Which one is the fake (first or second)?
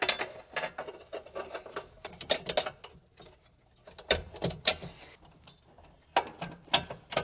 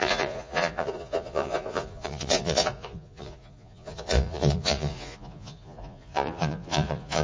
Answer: second